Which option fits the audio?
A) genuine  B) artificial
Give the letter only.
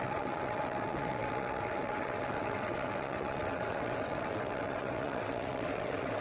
B